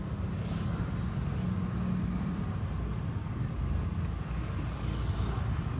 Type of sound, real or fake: real